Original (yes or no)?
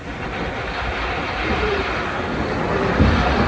yes